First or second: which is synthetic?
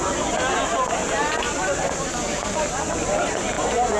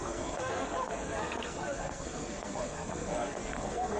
second